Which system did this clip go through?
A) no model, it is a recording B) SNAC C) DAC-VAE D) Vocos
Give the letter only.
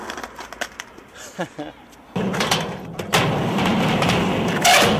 A